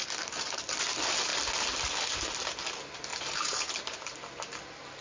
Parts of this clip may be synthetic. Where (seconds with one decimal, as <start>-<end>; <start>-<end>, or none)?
0.0-0.6; 3.1-3.7